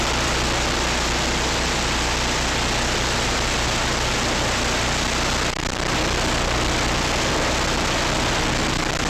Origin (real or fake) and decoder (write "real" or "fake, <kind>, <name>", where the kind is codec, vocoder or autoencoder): real